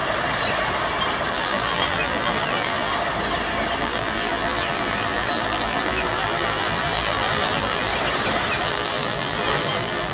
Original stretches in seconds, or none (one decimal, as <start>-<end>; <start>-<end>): 0.0-1.3; 2.9-3.8; 7.9-8.6